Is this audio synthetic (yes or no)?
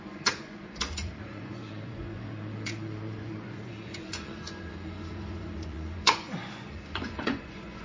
yes